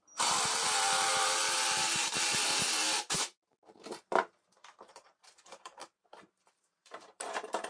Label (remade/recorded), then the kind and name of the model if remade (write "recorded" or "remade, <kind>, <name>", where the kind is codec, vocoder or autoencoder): remade, vocoder, BigVGAN v2